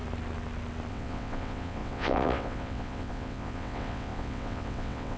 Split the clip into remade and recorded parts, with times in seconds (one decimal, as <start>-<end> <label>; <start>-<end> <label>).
0.0-0.9 recorded; 0.9-5.2 remade